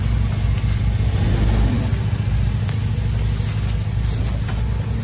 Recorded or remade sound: recorded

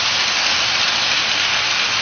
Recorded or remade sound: recorded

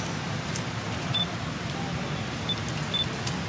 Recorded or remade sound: recorded